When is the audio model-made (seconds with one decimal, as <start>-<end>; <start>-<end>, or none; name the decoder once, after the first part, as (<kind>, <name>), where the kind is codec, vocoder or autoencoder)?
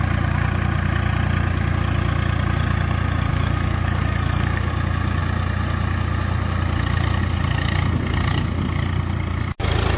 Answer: 3.3-4.7 (codec, DAC)